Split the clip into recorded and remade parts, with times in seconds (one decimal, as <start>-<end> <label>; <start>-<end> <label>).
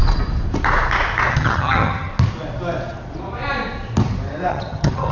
0.0-1.3 recorded; 1.3-2.1 remade; 2.1-4.5 recorded; 4.5-5.1 remade